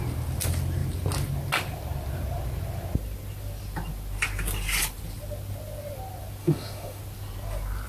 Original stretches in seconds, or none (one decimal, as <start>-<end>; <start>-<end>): 0.0-6.4; 7.0-7.9